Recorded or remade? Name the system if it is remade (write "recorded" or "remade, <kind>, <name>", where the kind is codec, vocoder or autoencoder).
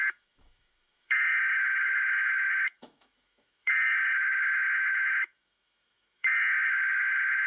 remade, autoencoder, DAC-VAE